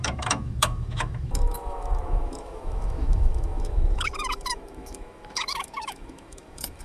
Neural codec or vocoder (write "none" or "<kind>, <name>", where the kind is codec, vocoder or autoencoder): autoencoder, DAC-VAE